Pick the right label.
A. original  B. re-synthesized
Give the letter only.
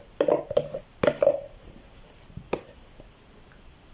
A